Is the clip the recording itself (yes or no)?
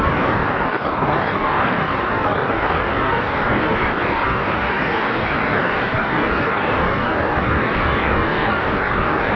no